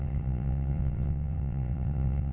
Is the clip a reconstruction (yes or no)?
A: yes